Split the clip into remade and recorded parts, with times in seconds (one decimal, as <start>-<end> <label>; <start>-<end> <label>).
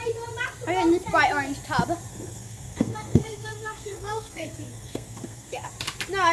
0.0-2.1 recorded; 2.1-5.7 remade; 5.7-6.3 recorded